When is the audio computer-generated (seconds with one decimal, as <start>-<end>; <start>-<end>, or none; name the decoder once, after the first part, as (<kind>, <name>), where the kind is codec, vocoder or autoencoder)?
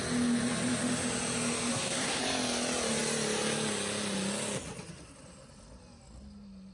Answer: 1.7-2.2 (codec, SNAC)